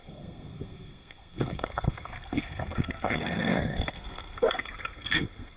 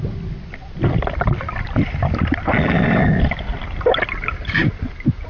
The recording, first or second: second